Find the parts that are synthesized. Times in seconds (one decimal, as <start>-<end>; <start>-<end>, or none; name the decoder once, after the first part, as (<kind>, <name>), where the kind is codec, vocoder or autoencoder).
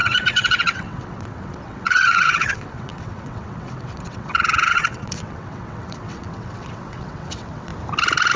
0.0-7.7 (vocoder, WaveNeXt)